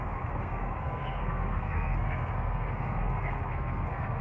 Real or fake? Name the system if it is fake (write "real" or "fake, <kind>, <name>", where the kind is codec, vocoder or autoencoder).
fake, codec, SNAC